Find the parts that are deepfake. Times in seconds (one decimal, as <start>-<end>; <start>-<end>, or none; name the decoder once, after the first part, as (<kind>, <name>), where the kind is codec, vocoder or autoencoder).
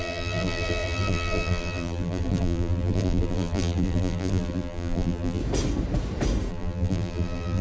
0.0-5.4 (vocoder, BigVGAN v2); 6.5-7.6